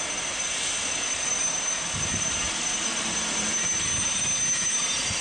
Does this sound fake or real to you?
real